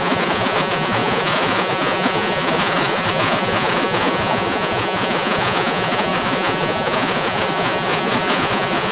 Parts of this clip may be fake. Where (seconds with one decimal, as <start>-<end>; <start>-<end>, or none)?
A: 0.0-8.9